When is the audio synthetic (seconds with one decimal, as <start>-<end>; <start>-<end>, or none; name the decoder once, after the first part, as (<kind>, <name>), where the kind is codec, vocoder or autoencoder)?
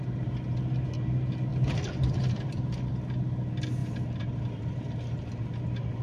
1.5-2.9 (vocoder, BigVGAN v2); 3.8-4.8